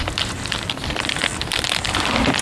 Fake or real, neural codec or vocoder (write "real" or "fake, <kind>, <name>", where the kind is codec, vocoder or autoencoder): real